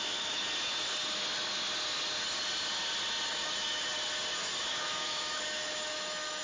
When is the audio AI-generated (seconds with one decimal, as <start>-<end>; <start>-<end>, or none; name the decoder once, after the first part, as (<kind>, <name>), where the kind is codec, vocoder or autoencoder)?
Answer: 0.0-0.4 (autoencoder, DAC-VAE); 3.3-3.9; 4.7-6.4